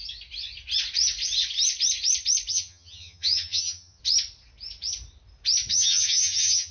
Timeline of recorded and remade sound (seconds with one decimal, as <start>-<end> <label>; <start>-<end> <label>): 0.0-2.5 recorded; 2.5-4.0 remade; 4.0-5.7 recorded; 5.7-6.7 remade